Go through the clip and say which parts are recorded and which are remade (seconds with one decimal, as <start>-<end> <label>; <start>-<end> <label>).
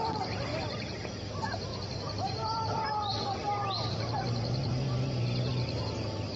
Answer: 0.0-0.5 recorded; 0.5-1.1 remade; 1.1-1.7 recorded; 1.7-5.5 remade; 5.5-6.4 recorded